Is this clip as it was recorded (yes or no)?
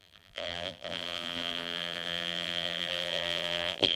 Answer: no